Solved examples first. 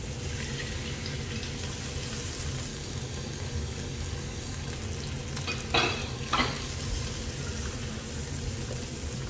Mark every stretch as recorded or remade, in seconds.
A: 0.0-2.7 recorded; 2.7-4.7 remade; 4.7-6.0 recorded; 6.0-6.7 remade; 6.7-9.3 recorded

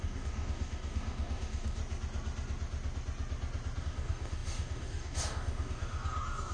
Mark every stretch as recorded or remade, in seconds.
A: 0.0-1.8 remade; 1.8-3.8 recorded; 3.8-6.5 remade

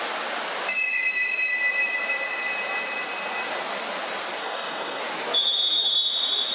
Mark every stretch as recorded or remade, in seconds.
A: 0.0-4.4 recorded; 4.4-5.0 remade; 5.0-6.5 recorded